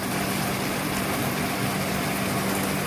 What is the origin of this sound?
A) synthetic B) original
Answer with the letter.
B